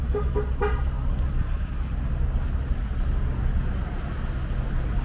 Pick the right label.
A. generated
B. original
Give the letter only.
B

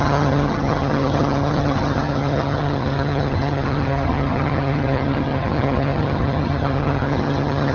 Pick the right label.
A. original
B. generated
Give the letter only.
B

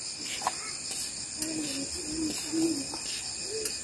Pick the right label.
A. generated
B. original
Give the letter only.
B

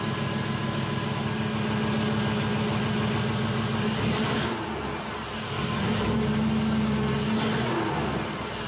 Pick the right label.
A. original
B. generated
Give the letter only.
A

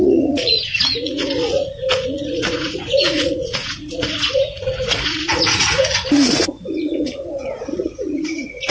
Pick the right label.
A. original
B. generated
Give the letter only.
B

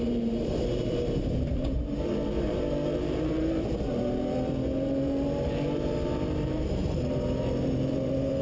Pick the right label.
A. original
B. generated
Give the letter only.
B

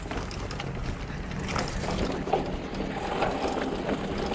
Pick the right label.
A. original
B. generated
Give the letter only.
A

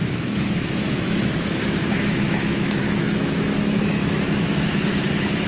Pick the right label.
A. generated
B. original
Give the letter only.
A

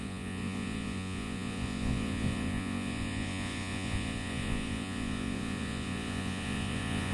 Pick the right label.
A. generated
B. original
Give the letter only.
A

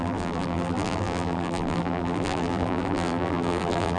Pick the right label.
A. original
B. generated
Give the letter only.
B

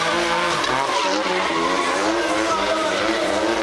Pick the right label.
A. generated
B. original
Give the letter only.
B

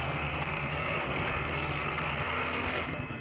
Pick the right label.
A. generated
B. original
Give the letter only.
A